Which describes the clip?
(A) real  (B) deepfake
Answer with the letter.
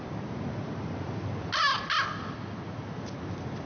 A